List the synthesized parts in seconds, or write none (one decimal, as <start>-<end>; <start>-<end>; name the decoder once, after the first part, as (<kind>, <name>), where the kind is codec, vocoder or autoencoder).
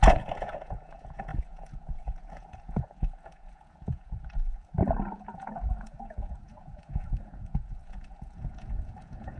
0.0-9.4 (vocoder, Vocos)